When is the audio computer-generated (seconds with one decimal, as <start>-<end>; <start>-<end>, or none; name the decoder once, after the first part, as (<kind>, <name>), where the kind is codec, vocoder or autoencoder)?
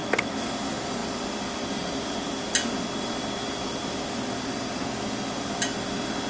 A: 0.0-0.5 (autoencoder, DAC-VAE)